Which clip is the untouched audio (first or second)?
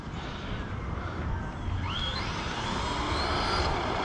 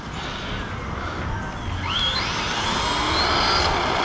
second